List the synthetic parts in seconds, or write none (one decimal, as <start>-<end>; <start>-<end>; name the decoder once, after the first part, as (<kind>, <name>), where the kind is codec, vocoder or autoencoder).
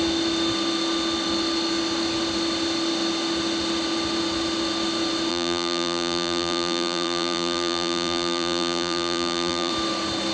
5.3-9.7 (vocoder, BigVGAN v2)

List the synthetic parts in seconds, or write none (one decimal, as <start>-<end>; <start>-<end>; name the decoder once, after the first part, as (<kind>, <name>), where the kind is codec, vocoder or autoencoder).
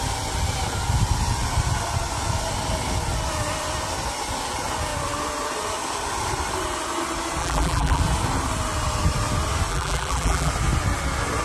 7.4-8.0 (vocoder, BigVGAN v2); 9.7-10.5